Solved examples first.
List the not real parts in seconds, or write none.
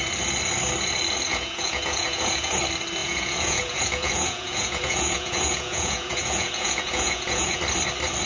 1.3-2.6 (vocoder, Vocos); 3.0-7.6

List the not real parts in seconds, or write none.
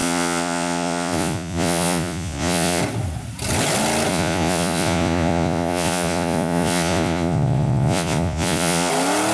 0.0-2.8 (vocoder, Vocos); 4.1-8.9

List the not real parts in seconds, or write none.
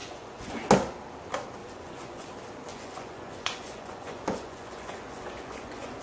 0.0-0.6 (vocoder, Vocos); 1.6-2.3; 2.7-6.0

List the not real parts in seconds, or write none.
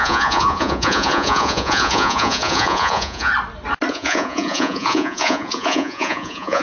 0.0-3.3 (vocoder, Vocos); 3.9-6.6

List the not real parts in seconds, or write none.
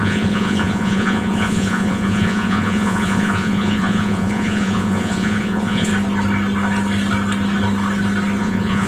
0.0-5.9 (vocoder, Vocos); 8.4-8.9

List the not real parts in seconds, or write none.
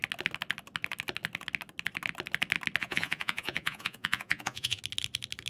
2.8-4.8 (vocoder, Vocos)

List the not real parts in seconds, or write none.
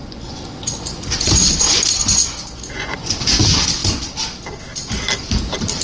0.0-3.1 (vocoder, Vocos)